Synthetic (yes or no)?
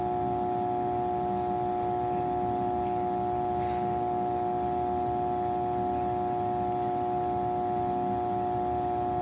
no